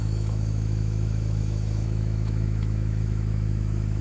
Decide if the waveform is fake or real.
fake